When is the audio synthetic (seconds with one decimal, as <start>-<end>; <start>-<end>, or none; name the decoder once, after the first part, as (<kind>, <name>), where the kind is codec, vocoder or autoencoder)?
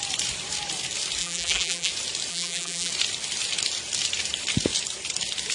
1.2-1.9 (vocoder, BigVGAN v2); 2.3-2.9